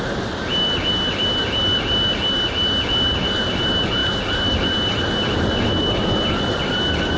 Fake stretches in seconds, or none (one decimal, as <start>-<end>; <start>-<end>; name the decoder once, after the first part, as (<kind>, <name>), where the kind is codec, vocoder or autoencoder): none